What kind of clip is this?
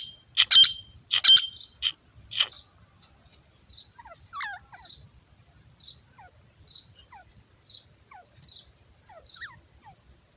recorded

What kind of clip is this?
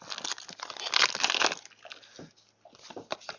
recorded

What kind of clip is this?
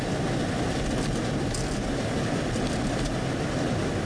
recorded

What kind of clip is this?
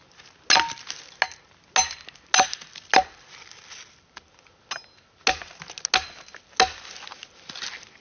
recorded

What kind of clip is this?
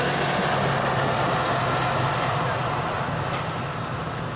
recorded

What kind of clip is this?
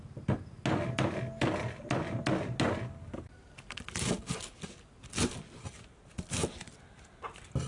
recorded